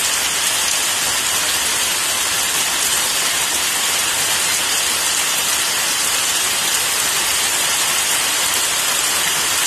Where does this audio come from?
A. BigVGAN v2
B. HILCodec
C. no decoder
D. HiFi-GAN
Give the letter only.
C